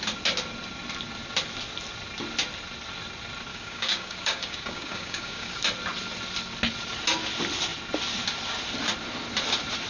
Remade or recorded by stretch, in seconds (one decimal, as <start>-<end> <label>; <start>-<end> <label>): 0.0-3.5 recorded; 3.5-5.6 remade; 5.6-9.9 recorded